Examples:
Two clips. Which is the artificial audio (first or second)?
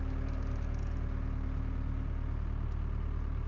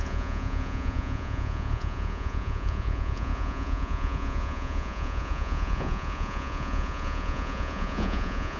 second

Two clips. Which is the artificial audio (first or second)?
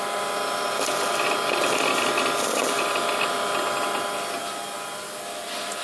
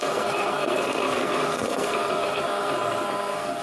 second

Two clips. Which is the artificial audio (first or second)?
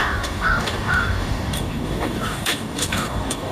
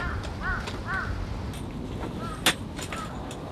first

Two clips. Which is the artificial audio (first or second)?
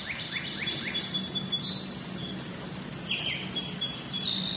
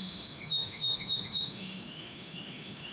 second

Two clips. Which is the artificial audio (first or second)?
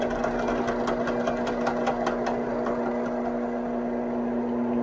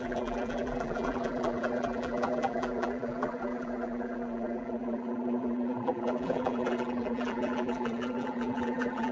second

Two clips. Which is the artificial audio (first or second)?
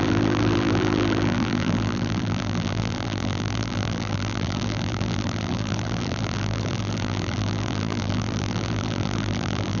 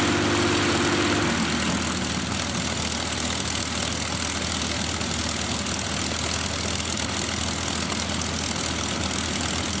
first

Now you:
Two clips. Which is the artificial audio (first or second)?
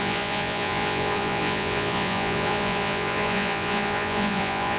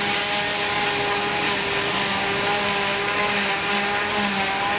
first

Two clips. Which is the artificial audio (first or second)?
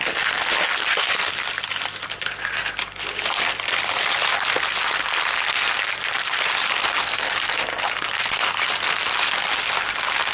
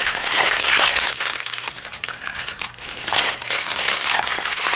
second